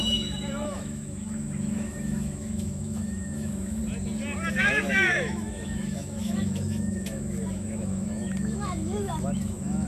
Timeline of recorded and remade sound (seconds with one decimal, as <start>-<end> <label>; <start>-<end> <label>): 0.0-3.8 remade; 3.8-4.5 recorded; 4.5-9.9 remade